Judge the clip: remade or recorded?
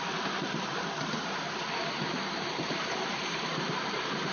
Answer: remade